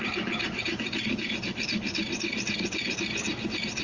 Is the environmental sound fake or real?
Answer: real